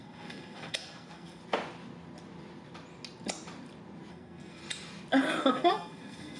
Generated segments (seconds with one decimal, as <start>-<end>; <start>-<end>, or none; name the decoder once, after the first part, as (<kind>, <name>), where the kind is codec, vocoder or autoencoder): 0.0-1.4 (codec, SNAC); 4.1-4.6; 5.4-6.4